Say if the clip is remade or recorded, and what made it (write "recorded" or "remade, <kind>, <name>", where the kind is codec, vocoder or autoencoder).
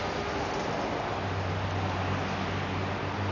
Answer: recorded